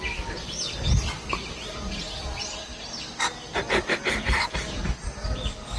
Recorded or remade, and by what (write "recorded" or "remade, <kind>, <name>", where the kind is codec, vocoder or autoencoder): recorded